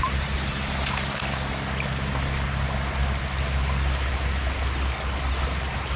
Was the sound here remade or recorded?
recorded